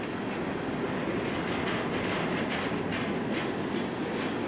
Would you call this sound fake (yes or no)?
no